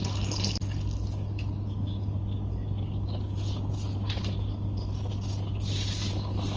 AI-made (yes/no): no